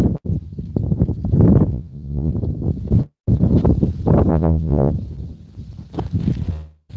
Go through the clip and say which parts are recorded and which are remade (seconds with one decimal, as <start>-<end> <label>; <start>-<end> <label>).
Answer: 0.0-1.7 recorded; 1.7-2.3 remade; 2.3-4.3 recorded; 4.3-4.9 remade; 4.9-7.0 recorded